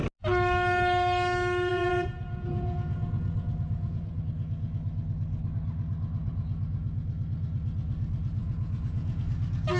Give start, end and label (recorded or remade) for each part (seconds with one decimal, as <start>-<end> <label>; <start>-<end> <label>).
0.0-1.7 recorded; 1.7-4.2 remade; 4.2-8.4 recorded; 8.4-9.2 remade; 9.2-9.8 recorded